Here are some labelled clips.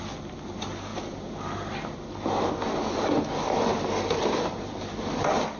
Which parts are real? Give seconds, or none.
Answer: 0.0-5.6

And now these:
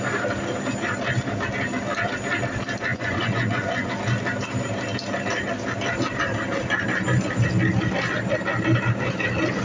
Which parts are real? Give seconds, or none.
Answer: 0.0-2.9; 3.9-9.6

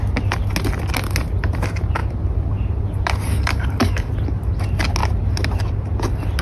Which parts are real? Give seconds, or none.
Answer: 0.0-3.3; 4.1-6.4

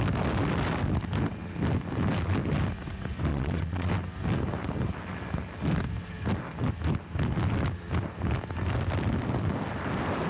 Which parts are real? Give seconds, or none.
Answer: 0.0-3.3; 3.9-10.3

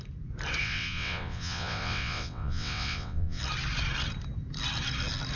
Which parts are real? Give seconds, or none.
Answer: 0.0-0.6; 3.4-5.4

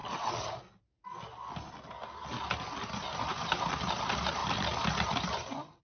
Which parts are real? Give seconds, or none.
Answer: 0.0-5.8